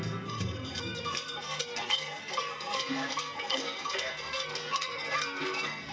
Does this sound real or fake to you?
fake